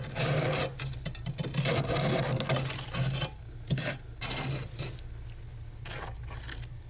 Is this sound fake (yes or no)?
no